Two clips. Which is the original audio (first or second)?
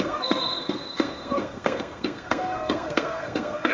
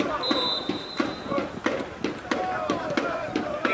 second